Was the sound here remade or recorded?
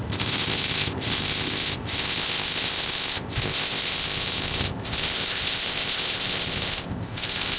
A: remade